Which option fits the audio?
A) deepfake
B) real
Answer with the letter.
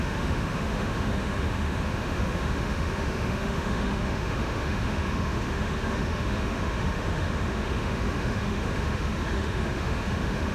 A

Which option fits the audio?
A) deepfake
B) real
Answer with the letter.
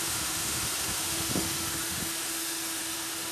A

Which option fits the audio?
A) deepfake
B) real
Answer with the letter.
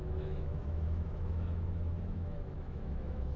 A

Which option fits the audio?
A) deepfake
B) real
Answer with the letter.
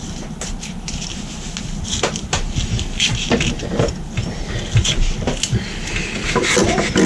B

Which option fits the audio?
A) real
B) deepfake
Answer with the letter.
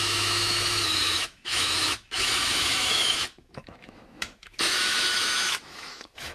B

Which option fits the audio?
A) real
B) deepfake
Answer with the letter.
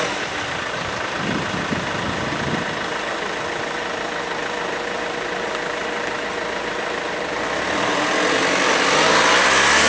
A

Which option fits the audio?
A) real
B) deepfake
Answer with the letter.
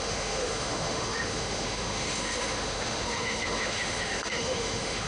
B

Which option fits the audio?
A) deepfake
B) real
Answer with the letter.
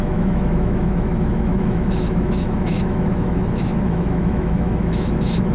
A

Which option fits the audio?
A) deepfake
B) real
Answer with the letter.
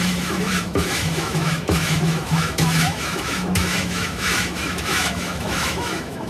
A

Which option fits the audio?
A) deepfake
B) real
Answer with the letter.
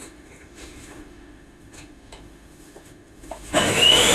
A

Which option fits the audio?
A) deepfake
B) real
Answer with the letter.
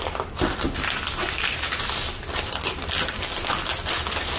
B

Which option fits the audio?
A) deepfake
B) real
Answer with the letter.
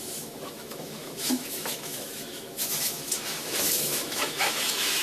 A